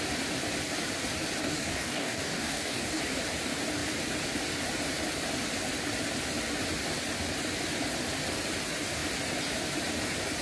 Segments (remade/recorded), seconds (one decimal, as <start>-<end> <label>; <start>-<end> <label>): 0.0-1.4 recorded; 1.4-3.0 remade; 3.0-10.4 recorded